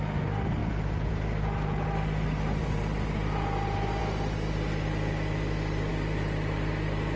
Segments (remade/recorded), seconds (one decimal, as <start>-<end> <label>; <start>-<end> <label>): 0.0-7.2 recorded